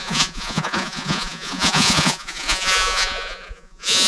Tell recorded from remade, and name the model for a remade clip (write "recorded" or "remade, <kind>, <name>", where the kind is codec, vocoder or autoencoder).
remade, vocoder, Vocos